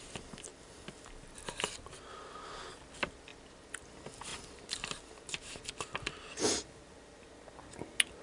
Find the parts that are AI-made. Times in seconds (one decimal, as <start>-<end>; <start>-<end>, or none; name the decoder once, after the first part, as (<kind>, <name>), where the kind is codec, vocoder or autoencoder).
none